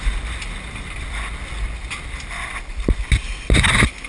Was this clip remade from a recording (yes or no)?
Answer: no